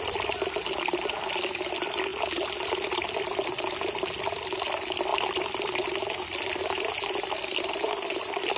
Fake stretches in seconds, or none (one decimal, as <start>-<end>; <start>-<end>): none